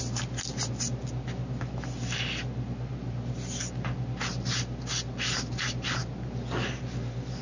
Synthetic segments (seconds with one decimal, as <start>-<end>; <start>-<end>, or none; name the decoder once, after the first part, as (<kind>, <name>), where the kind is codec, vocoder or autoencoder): none